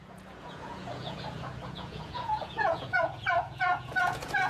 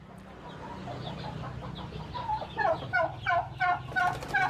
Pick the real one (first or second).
second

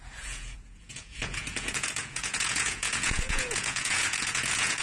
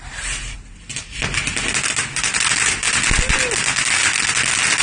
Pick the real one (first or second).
second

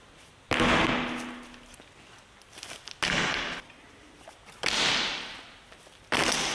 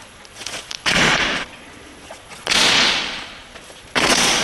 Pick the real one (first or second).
first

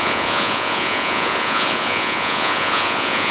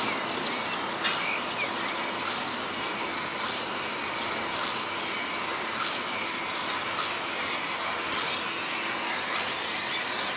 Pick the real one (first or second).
second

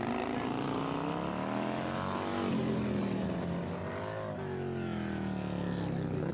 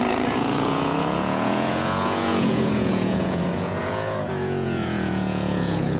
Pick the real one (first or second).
first